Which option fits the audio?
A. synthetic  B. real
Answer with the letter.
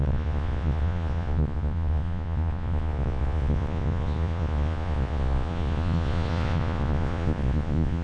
A